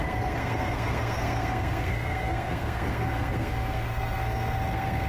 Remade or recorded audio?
remade